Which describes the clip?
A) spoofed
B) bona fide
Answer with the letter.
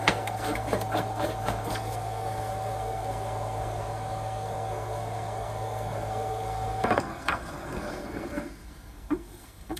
A